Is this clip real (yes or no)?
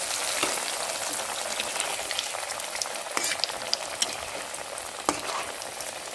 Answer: yes